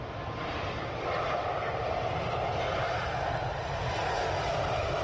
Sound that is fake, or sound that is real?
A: real